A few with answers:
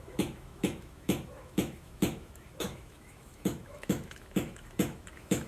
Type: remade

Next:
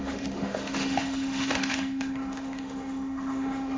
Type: remade